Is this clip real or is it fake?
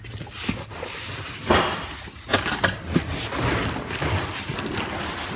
real